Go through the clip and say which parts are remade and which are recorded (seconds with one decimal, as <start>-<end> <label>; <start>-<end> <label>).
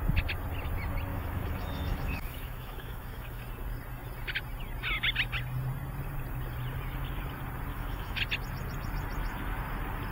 0.0-1.1 recorded; 1.1-3.4 remade; 3.4-7.7 recorded; 7.7-8.2 remade; 8.2-10.1 recorded